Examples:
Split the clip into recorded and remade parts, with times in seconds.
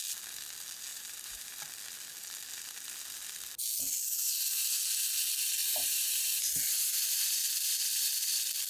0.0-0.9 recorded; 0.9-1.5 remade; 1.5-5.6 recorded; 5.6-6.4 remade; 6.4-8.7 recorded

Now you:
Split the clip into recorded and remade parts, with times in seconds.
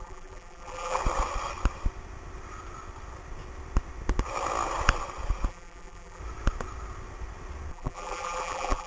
0.0-1.0 remade; 1.0-5.5 recorded; 5.5-6.2 remade; 6.2-7.7 recorded; 7.7-8.9 remade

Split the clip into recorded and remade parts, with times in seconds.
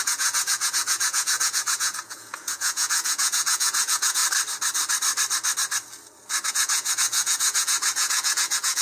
0.0-4.2 remade; 4.2-6.5 recorded; 6.5-8.8 remade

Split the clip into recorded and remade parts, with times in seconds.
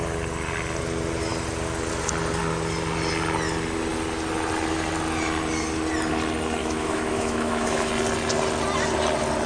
0.0-6.6 recorded; 6.6-7.9 remade; 7.9-9.5 recorded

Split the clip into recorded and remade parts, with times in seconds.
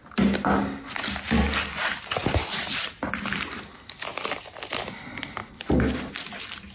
0.0-2.2 recorded; 2.2-2.9 remade; 2.9-5.4 recorded; 5.4-6.1 remade; 6.1-6.7 recorded